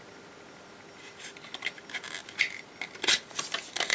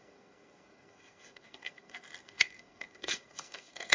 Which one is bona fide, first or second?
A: first